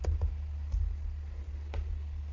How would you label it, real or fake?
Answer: real